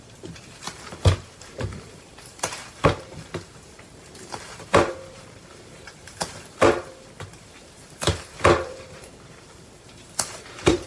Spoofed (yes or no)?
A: yes